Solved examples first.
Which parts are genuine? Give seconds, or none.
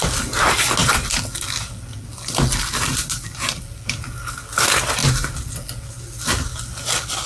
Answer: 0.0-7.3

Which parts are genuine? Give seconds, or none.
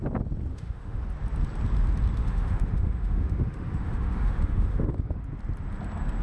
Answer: 0.0-0.5; 1.0-2.2; 5.2-6.2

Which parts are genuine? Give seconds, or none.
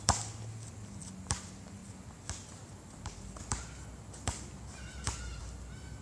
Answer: 0.0-6.0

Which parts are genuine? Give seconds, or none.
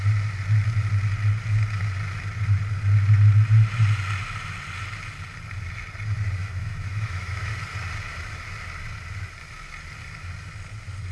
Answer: 0.0-6.4; 7.5-11.1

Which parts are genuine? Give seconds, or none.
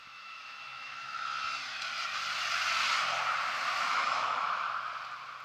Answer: 1.2-3.9; 4.7-5.4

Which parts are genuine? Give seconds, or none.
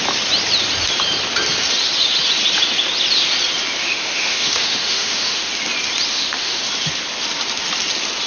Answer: 0.0-3.8; 5.5-6.1; 6.6-8.3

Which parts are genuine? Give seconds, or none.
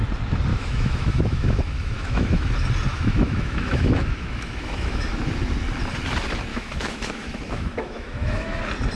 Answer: 0.0-0.5; 2.5-2.9; 5.2-6.5; 8.6-9.0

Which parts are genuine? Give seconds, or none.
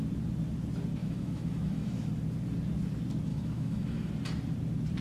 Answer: 0.0-1.0; 2.1-3.3; 4.1-5.0